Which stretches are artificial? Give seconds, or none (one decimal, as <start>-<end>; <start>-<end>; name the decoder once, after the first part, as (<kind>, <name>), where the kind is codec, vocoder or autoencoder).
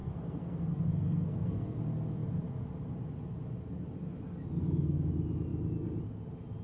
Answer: 0.0-1.8 (codec, SNAC); 4.6-5.1